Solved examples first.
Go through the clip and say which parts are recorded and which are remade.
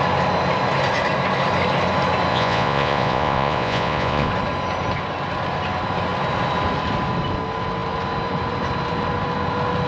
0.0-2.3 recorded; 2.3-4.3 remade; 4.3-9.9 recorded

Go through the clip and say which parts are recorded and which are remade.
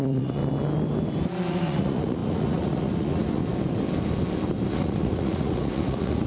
0.0-0.4 remade; 0.4-1.5 recorded; 1.5-3.4 remade; 3.4-4.7 recorded; 4.7-6.3 remade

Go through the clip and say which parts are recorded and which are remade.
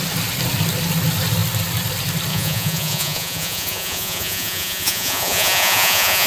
0.0-2.3 recorded; 2.3-6.3 remade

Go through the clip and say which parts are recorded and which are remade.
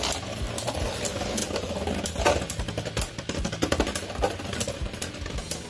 0.0-5.7 recorded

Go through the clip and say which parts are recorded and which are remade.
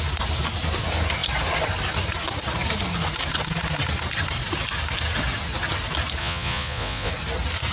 0.0-6.2 recorded; 6.2-7.1 remade; 7.1-7.7 recorded